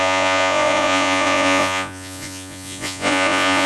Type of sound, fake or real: fake